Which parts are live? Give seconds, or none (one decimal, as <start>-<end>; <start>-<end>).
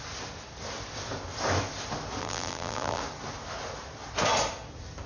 0.0-2.2; 3.0-5.1